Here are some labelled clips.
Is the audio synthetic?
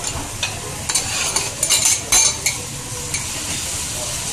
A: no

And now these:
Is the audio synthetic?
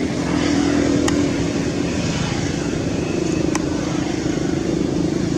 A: yes